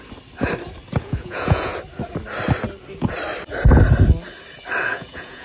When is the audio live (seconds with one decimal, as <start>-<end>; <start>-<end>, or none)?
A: 0.0-1.0; 1.7-4.8